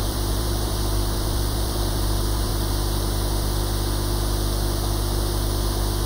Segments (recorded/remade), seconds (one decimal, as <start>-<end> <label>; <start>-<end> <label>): 0.0-2.5 remade; 2.5-6.1 recorded

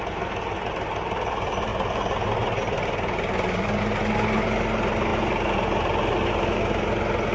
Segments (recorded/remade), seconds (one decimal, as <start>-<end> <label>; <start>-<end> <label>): 0.0-7.3 recorded

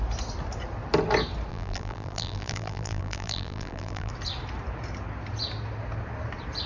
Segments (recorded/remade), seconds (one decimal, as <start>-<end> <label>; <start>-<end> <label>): 0.0-1.5 recorded; 1.5-4.1 remade; 4.1-6.7 recorded

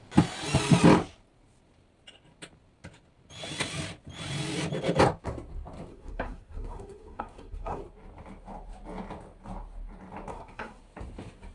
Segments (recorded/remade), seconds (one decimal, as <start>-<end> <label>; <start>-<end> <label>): 0.0-5.9 recorded; 5.9-7.8 remade; 7.8-10.3 recorded; 10.3-10.8 remade; 10.8-11.5 recorded